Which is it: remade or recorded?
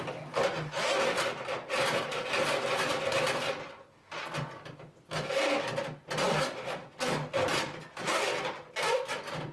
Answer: recorded